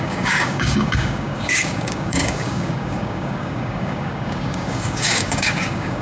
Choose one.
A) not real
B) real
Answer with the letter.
A